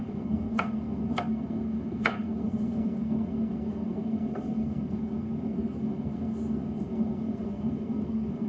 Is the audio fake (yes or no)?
yes